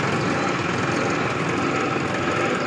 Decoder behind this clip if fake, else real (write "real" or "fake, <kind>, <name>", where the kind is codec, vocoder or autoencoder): real